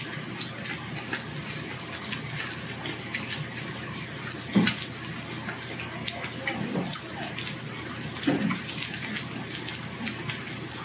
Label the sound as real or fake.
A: real